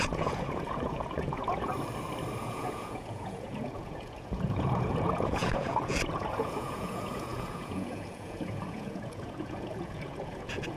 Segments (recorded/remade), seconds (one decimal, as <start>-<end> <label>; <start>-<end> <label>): 0.0-1.7 remade; 1.7-2.4 recorded; 2.4-10.8 remade

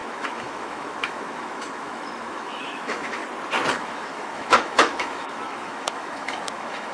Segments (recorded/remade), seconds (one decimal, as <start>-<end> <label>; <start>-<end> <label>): 0.0-3.2 remade; 3.2-3.7 recorded; 3.7-6.9 remade

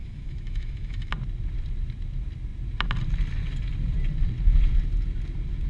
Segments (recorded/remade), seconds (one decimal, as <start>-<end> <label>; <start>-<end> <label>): 0.0-1.1 remade; 1.1-5.7 recorded

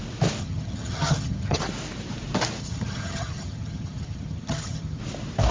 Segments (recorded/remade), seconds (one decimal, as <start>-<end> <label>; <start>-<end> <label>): 0.0-0.4 recorded; 0.4-1.6 remade; 1.6-2.6 recorded; 2.6-5.0 remade; 5.0-5.5 recorded

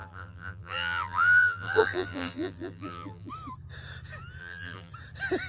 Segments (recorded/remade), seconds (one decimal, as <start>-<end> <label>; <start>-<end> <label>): 0.0-3.3 remade; 3.3-4.4 recorded; 4.4-4.9 remade; 4.9-5.5 recorded

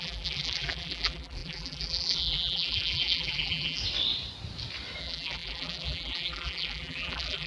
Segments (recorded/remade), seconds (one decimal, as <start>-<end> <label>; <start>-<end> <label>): 0.0-3.8 remade; 3.8-5.0 recorded; 5.0-7.5 remade